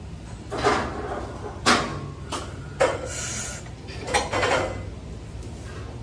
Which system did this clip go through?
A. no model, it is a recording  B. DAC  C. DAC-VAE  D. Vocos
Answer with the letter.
A